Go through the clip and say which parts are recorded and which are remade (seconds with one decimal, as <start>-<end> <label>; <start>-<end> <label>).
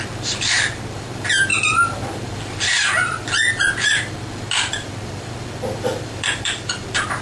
0.0-7.2 remade